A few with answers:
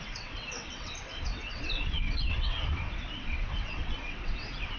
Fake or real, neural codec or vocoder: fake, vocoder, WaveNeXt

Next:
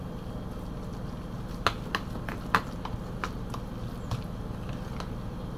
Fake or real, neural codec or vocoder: real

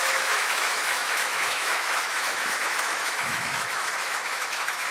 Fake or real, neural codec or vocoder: fake, autoencoder, DAC-VAE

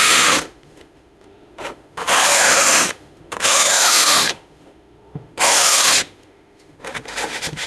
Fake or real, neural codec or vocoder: fake, autoencoder, DAC-VAE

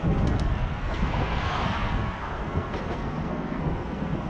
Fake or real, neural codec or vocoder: fake, codec, SNAC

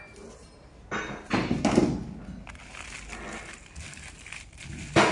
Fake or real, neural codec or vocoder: real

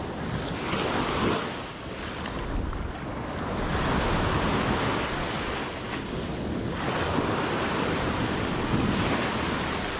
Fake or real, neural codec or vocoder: real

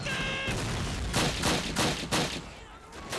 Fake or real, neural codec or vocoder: real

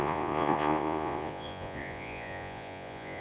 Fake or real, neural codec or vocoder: fake, vocoder, Vocos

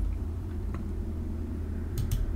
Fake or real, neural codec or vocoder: fake, vocoder, BigVGAN v2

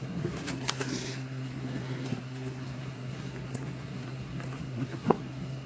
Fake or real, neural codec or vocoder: fake, codec, SNAC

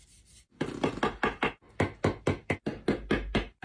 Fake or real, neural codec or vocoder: real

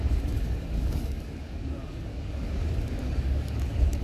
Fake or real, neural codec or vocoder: fake, codec, DAC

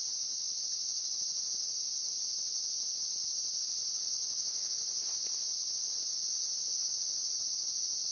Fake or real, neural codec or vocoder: real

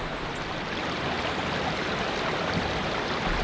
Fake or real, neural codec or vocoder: real